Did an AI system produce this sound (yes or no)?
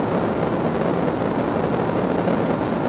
no